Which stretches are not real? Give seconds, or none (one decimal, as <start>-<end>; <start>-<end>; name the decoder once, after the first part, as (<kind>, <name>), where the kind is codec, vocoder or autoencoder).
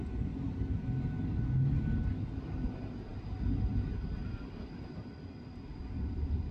0.0-0.6 (vocoder, BigVGAN v2); 4.2-5.5